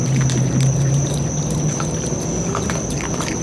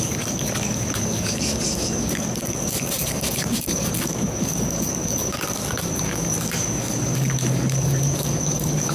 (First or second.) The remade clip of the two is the second